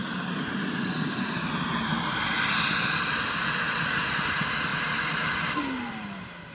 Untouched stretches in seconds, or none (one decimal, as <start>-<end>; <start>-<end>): 0.0-6.5